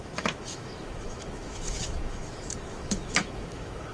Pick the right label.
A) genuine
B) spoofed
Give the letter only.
B